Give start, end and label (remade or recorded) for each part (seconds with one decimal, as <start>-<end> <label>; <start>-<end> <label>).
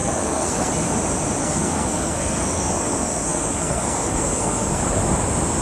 0.0-0.7 remade; 0.7-1.4 recorded; 1.4-4.8 remade; 4.8-5.6 recorded